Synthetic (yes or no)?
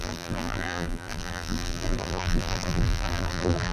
yes